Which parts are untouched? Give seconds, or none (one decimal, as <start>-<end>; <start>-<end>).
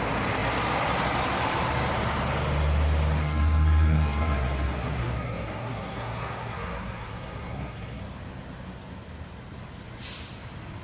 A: 0.0-3.2; 8.0-10.8